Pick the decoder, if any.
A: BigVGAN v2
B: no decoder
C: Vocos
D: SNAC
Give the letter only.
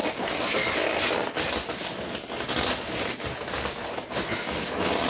B